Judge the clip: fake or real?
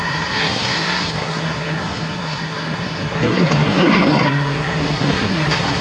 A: fake